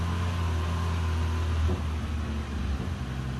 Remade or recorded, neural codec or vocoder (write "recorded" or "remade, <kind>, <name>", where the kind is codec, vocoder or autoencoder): recorded